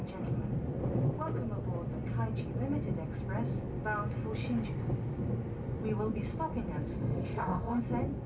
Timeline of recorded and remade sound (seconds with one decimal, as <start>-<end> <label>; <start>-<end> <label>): 0.0-6.9 recorded; 6.9-7.8 remade; 7.8-8.3 recorded